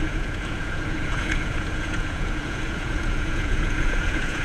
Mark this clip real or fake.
fake